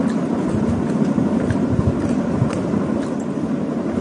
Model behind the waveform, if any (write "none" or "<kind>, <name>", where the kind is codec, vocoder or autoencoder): none